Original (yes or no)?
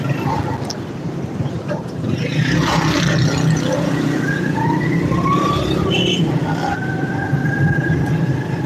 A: no